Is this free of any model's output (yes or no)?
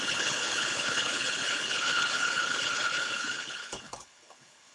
no